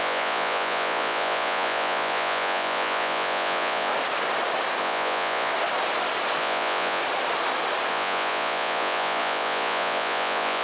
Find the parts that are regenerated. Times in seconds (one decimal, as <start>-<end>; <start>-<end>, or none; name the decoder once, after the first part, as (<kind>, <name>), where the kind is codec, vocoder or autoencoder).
0.0-3.9 (vocoder, Vocos); 4.8-5.5; 6.4-7.0; 7.9-10.6

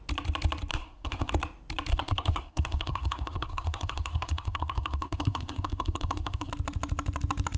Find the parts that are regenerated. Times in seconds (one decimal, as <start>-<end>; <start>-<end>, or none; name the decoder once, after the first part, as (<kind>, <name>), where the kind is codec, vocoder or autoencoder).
0.7-1.3 (codec, SNAC); 1.9-6.5

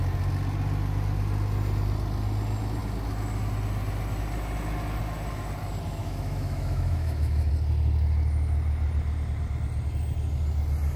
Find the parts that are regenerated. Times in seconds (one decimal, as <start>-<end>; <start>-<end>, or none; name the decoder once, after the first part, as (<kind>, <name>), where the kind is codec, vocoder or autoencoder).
6.0-7.5 (autoencoder, DAC-VAE)